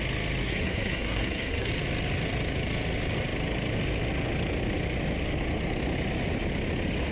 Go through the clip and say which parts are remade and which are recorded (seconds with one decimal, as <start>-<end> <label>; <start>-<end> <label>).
0.0-0.4 recorded; 0.4-1.7 remade; 1.7-7.1 recorded